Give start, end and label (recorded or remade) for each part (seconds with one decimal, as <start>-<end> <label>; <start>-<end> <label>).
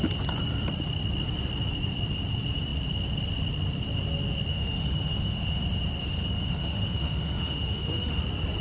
0.0-4.5 recorded; 4.5-5.6 remade; 5.6-6.0 recorded; 6.0-8.2 remade; 8.2-8.6 recorded